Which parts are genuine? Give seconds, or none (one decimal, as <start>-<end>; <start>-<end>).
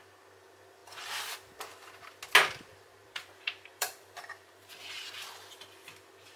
0.0-2.7; 4.7-6.4